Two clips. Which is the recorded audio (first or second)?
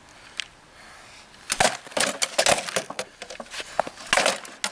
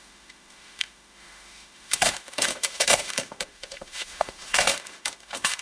first